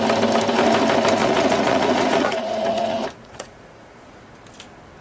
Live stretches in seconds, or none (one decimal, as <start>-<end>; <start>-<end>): 0.0-1.2; 4.2-5.0